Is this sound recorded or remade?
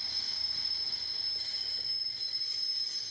recorded